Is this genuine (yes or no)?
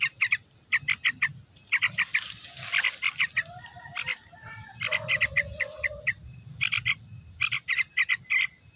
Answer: yes